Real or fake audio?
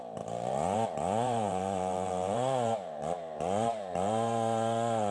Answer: fake